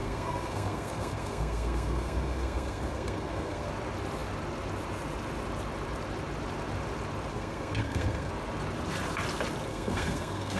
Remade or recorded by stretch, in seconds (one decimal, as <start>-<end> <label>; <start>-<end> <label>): 0.0-3.7 remade; 3.7-7.3 recorded; 7.3-8.3 remade; 8.3-9.7 recorded; 9.7-10.6 remade